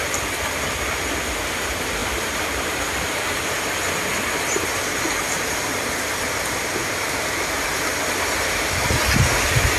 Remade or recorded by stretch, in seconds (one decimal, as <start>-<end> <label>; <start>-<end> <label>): 0.0-2.0 recorded; 2.0-3.4 remade; 3.4-6.8 recorded; 6.8-7.7 remade; 7.7-9.8 recorded

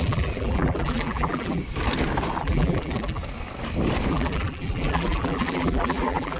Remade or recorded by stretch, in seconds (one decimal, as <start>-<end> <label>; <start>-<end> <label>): 0.0-1.6 remade; 1.6-2.4 recorded; 2.4-3.2 remade; 3.2-4.1 recorded; 4.1-6.4 remade